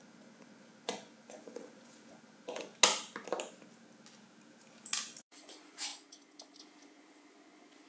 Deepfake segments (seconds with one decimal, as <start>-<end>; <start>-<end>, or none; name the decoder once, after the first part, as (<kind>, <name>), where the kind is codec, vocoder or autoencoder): 0.0-2.7 (vocoder, Vocos); 5.2-7.9